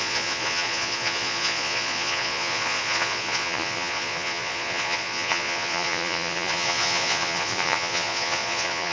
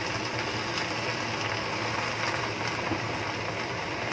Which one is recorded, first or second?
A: second